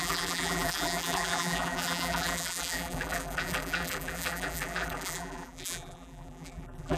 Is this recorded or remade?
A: remade